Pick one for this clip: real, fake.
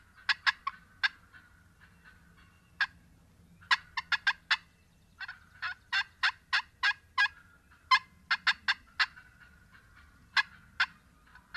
real